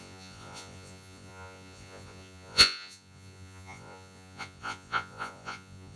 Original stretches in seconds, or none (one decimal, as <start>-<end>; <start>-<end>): none